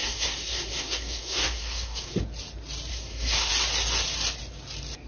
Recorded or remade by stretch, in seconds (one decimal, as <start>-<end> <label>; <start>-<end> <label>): 0.0-2.2 remade; 2.2-2.9 recorded; 2.9-3.5 remade; 3.5-5.1 recorded